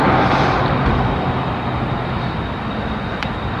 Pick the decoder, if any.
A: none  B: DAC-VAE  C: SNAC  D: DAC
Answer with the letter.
A